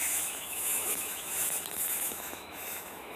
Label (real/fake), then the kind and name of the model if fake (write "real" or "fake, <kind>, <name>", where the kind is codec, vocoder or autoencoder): fake, autoencoder, DAC-VAE